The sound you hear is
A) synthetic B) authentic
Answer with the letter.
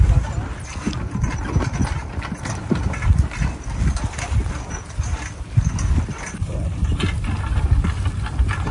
B